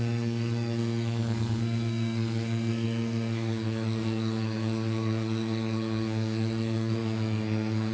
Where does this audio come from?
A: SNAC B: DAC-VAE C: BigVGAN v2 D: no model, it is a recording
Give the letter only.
A